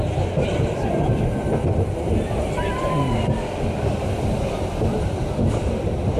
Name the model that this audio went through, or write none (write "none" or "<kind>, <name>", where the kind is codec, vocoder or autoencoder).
none